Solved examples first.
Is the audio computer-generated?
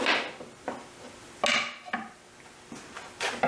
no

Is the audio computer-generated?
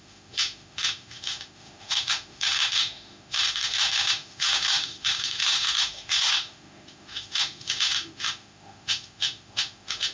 yes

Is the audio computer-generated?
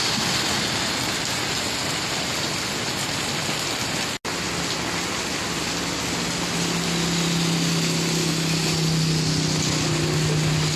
no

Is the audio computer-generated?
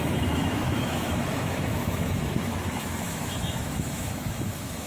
yes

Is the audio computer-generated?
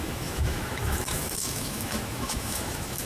yes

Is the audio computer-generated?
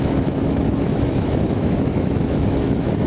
yes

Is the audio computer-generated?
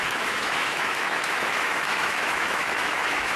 yes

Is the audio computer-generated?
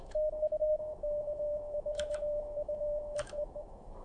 yes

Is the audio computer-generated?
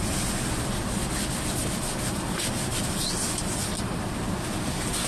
no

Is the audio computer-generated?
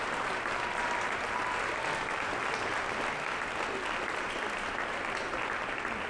no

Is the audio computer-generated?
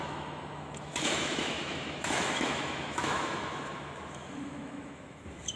yes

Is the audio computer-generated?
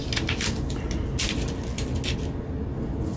no